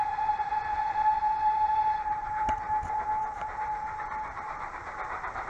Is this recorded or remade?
remade